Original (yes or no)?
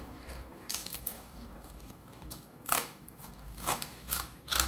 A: no